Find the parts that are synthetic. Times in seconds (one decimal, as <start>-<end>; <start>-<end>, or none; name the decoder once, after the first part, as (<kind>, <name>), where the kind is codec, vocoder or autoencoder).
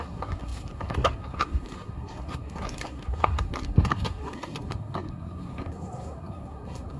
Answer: 0.0-7.0 (codec, SNAC)